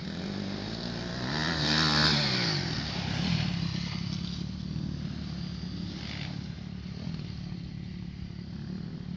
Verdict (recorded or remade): recorded